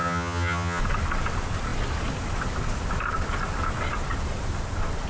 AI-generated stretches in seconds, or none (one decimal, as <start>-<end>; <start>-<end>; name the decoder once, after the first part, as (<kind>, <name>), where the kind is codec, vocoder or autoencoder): 0.0-0.8 (vocoder, HiFi-GAN)

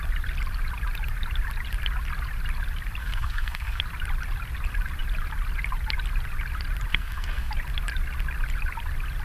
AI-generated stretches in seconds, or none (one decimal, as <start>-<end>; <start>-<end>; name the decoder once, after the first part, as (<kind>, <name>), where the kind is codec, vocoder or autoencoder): 3.0-3.8 (codec, SNAC); 6.9-7.5

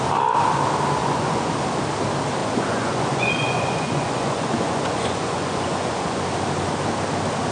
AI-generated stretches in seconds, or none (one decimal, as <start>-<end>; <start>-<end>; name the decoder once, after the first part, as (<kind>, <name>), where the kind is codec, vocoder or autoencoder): 1.0-1.5 (vocoder, Vocos); 2.4-6.2

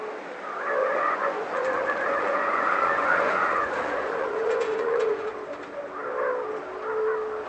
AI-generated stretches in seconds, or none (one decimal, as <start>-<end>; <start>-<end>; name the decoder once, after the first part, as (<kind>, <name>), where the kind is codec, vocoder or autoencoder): 0.8-5.3 (vocoder, Vocos)

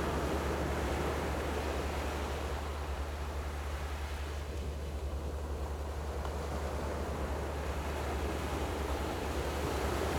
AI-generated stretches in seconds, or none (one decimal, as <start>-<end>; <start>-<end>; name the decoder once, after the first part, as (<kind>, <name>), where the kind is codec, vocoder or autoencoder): 8.6-10.2 (vocoder, BigVGAN v2)